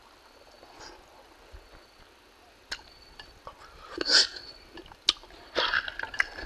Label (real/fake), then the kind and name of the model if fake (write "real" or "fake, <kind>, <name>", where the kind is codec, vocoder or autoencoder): real